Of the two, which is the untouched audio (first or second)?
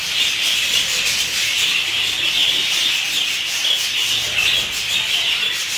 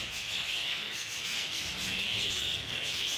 first